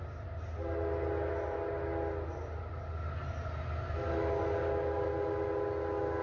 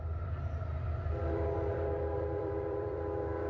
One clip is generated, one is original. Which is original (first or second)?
first